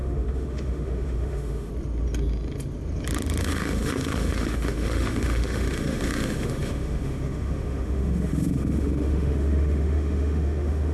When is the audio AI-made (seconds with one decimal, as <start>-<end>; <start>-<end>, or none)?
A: 0.0-1.7; 3.4-10.9